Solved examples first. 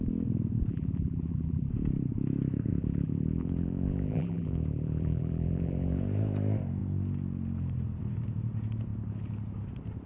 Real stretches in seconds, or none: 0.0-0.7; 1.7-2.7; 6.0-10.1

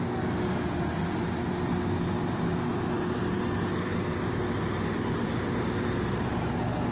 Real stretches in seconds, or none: 0.0-6.9

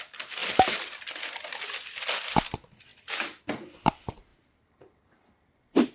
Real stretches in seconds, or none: 0.0-0.4; 1.1-4.3

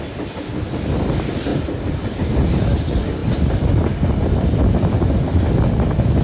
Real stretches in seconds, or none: 0.0-1.5; 2.2-3.2; 5.0-6.2

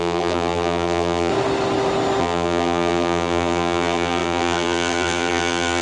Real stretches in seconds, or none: 1.3-2.2

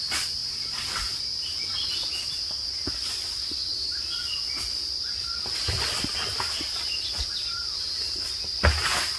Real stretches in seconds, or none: 0.0-9.2

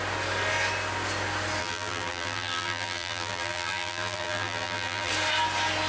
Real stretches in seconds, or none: 0.0-1.6; 5.1-5.9